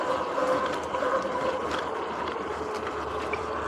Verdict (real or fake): fake